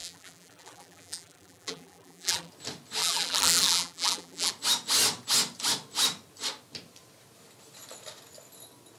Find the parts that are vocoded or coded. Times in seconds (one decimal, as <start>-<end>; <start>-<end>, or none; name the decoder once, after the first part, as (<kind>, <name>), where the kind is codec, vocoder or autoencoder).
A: 0.0-2.5 (vocoder, BigVGAN v2); 3.0-4.5